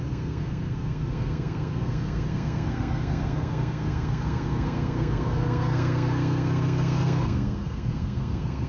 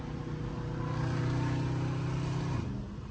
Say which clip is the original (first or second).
second